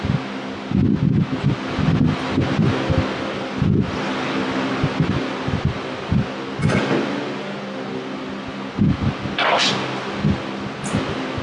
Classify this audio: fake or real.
real